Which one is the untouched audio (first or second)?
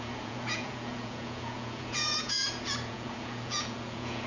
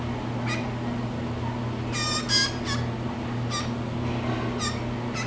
second